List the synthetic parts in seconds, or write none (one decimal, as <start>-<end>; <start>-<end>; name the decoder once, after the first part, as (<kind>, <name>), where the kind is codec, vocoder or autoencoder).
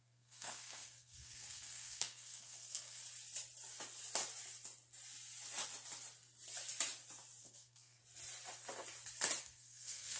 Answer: 0.0-3.0 (codec, SNAC); 7.4-8.0; 9.4-10.2